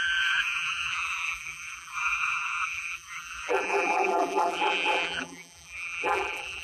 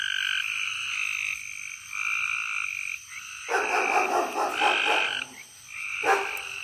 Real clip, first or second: second